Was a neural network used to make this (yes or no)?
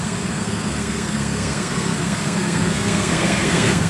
yes